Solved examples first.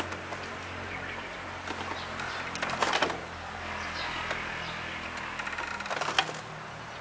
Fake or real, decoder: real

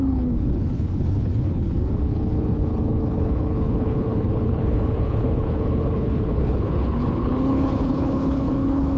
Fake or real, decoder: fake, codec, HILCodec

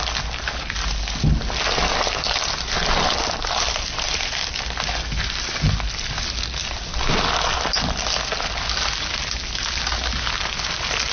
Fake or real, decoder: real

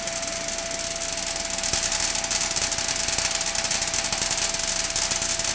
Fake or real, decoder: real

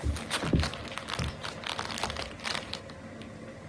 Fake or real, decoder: real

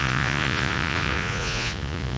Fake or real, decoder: fake, vocoder, Vocos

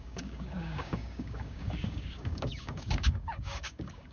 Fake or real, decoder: fake, codec, DAC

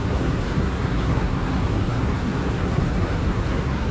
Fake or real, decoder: fake, codec, SNAC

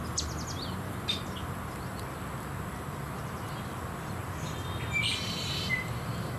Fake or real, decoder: real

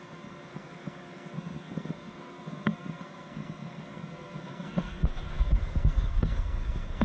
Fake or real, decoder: fake, codec, SNAC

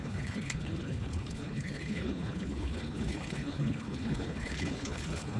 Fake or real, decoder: fake, codec, HILCodec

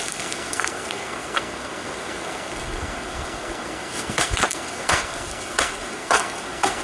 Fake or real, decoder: fake, codec, SNAC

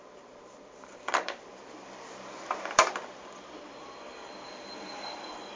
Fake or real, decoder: fake, vocoder, BigVGAN v2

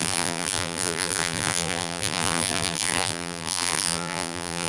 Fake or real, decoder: fake, vocoder, BigVGAN v2